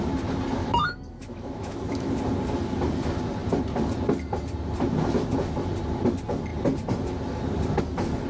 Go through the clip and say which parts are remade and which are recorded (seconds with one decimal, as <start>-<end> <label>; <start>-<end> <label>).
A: 0.0-0.6 recorded; 0.6-2.1 remade; 2.1-8.3 recorded